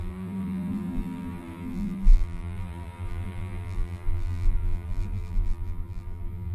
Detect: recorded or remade remade